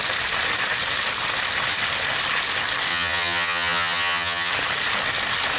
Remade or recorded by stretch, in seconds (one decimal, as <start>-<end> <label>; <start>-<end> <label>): 0.0-2.9 recorded; 2.9-4.5 remade; 4.5-5.6 recorded